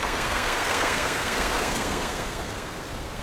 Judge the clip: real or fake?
fake